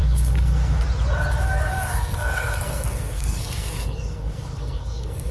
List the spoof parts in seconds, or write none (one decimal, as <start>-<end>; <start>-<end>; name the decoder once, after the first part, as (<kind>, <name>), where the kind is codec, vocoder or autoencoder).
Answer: 0.0-0.8 (codec, SNAC); 1.7-5.3